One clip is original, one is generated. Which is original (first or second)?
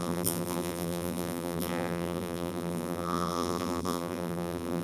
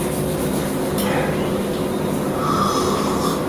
second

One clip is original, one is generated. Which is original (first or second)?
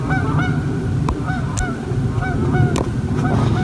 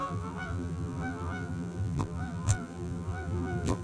first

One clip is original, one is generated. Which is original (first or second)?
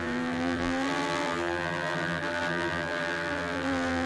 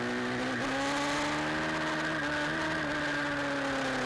second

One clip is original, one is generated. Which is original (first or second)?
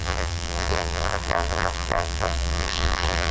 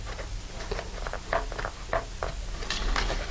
second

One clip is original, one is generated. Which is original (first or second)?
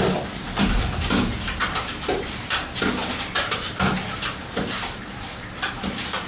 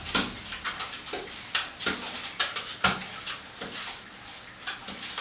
second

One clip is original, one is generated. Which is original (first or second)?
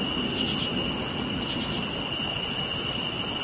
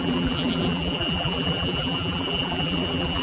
first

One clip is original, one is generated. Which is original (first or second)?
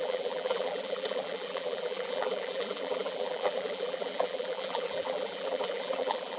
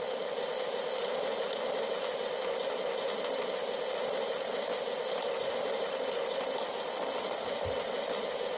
second